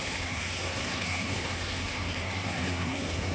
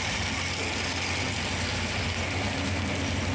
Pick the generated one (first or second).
first